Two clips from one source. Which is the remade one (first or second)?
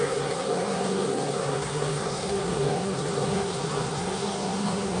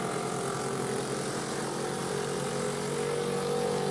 first